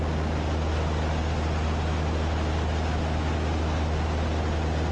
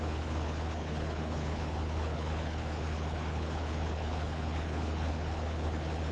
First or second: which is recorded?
first